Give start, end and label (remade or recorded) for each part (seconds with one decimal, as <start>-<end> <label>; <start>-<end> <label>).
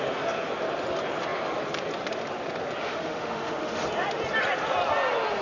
0.0-2.8 recorded; 2.8-3.8 remade; 3.8-5.4 recorded